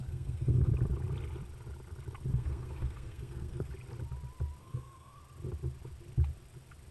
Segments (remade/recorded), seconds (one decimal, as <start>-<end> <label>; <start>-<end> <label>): 0.0-0.7 remade; 0.7-2.3 recorded; 2.3-3.7 remade; 3.7-4.6 recorded; 4.6-5.2 remade; 5.2-6.9 recorded